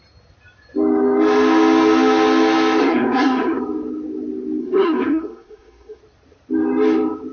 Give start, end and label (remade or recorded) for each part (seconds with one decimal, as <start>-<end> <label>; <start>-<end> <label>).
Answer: 0.0-2.8 recorded; 2.8-3.6 remade; 3.6-4.6 recorded; 4.6-6.0 remade; 6.0-7.3 recorded